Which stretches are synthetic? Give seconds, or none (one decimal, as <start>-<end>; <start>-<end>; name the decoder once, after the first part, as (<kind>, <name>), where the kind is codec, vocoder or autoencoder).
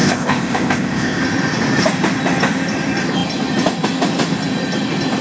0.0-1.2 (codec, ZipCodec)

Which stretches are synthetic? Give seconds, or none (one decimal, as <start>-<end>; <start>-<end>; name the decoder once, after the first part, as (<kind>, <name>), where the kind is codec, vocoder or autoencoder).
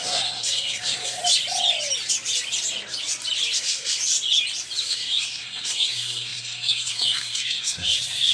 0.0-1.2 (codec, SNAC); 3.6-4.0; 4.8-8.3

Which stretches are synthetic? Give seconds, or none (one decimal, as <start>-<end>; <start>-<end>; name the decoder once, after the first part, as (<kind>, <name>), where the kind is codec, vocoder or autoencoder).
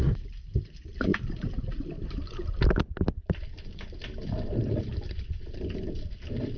none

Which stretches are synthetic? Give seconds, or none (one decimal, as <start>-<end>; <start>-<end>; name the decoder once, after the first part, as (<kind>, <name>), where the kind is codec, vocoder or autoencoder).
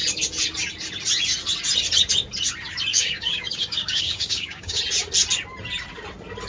2.9-4.8 (codec, DAC)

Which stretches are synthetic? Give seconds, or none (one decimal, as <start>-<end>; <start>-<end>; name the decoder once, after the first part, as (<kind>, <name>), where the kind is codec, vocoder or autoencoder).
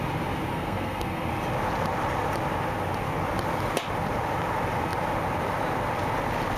0.5-1.3 (codec, SNAC)